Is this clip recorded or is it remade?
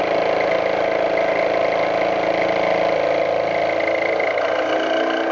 recorded